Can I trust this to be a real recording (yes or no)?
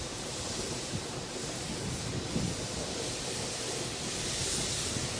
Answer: yes